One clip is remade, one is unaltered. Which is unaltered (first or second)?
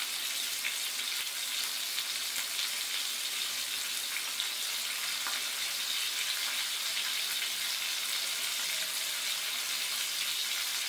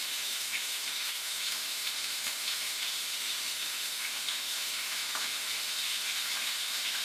first